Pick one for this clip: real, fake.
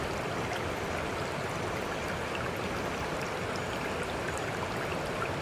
real